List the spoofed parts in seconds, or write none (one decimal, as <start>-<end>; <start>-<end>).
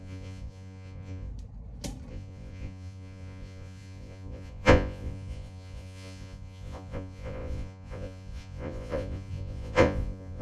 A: 0.0-1.3; 2.1-10.4